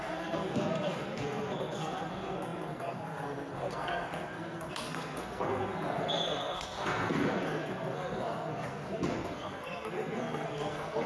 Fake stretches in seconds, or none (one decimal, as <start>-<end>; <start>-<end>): 0.0-11.1